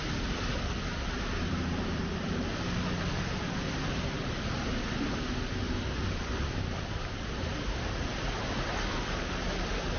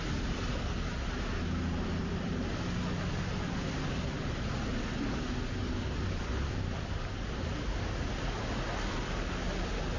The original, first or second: second